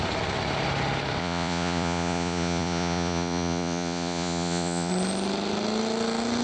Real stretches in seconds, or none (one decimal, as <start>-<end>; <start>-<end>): 0.0-1.2; 4.9-6.4